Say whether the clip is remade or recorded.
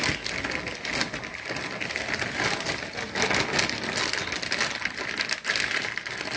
recorded